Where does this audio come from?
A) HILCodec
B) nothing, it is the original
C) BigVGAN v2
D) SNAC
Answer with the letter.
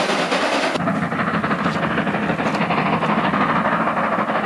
B